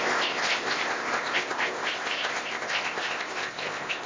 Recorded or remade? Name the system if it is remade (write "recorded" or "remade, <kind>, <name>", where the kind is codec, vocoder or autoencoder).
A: remade, codec, ZipCodec